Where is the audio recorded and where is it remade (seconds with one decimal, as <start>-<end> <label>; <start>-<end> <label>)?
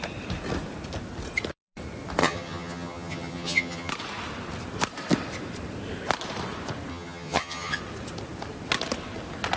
0.0-2.2 recorded; 2.2-3.9 remade; 3.9-6.9 recorded; 6.9-7.8 remade; 7.8-9.6 recorded